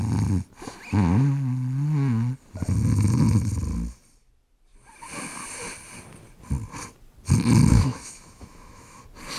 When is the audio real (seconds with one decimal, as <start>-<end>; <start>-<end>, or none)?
0.0-7.7; 9.0-9.4

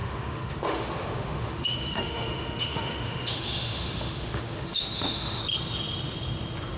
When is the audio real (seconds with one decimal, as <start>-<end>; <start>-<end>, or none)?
5.4-6.8

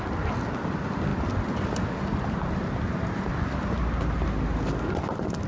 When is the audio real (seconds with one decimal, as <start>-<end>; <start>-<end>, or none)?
0.0-5.5

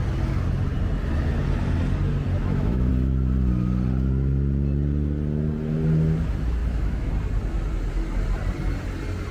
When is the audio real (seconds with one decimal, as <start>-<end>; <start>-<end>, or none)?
0.0-2.4; 2.9-6.6; 7.1-9.3

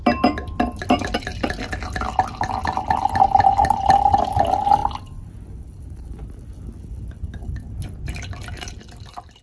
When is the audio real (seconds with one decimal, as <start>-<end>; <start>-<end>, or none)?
0.0-9.4

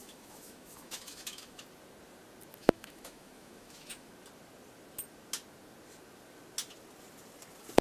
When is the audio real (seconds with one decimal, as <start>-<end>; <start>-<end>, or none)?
1.6-2.6; 4.1-7.8